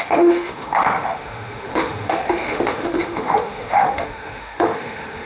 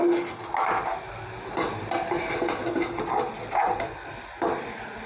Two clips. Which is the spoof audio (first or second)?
first